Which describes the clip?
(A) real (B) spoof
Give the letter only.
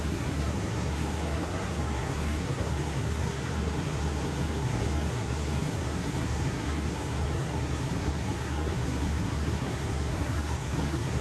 B